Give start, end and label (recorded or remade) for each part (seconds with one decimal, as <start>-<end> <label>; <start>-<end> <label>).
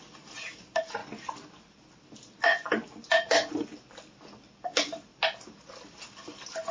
0.0-6.7 recorded